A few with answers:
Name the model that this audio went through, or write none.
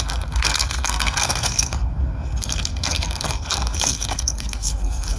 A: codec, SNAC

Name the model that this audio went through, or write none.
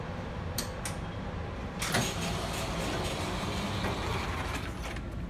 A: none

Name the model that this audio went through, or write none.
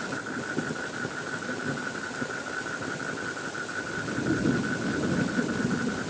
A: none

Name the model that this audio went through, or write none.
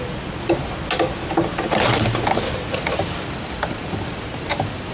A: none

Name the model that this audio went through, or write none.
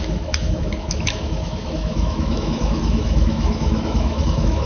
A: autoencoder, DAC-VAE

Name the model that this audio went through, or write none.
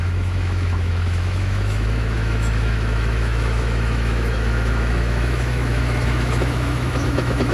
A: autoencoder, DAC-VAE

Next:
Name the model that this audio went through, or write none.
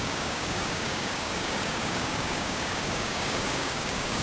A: codec, DAC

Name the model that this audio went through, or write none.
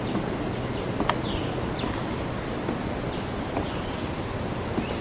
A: none